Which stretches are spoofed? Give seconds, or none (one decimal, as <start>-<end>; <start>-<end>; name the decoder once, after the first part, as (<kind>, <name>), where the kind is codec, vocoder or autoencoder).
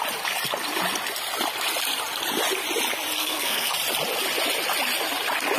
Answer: 3.2-3.7 (codec, SNAC)